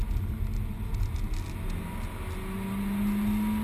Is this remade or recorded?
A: recorded